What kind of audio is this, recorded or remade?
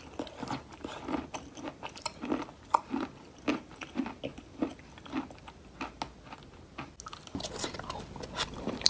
recorded